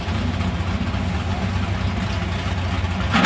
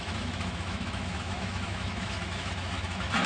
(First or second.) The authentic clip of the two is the first